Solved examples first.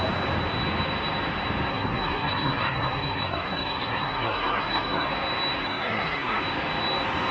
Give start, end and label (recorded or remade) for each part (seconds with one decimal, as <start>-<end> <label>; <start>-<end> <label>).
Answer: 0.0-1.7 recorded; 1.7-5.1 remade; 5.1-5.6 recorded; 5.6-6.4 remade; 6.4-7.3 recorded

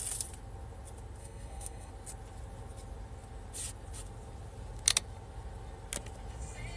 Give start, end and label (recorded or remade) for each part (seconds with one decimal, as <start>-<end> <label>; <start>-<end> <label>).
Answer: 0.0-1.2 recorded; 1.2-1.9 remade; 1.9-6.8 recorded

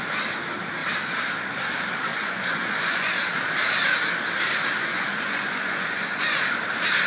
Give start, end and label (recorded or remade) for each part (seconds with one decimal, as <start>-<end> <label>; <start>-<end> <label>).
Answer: 0.0-2.1 recorded; 2.1-3.1 remade; 3.1-4.9 recorded; 4.9-6.4 remade; 6.4-7.1 recorded